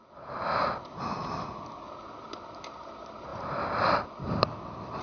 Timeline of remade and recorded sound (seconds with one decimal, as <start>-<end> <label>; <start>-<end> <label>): 0.0-5.0 recorded